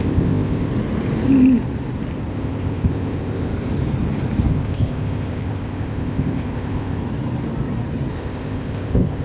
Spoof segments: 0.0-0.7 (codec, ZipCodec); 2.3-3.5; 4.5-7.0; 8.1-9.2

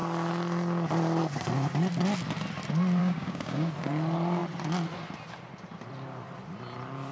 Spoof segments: 3.0-3.7 (codec, DAC)

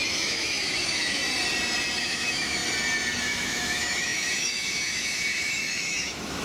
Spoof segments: 0.0-1.2 (autoencoder, DAC-VAE); 2.0-2.6; 3.2-6.4

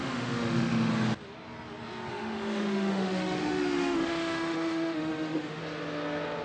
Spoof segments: 0.0-0.9 (autoencoder, DAC-VAE); 2.1-5.6

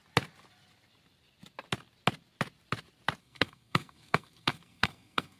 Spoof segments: 3.2-5.4 (codec, SNAC)

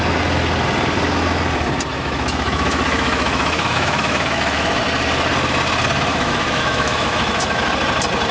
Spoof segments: 1.9-4.8 (autoencoder, DAC-VAE); 6.1-7.7

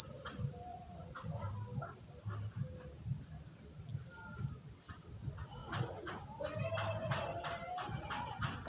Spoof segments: 0.7-1.5 (vocoder, Vocos); 5.6-6.3